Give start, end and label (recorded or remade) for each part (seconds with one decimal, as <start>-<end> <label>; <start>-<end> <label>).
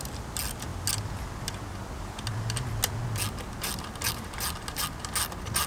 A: 0.0-5.7 recorded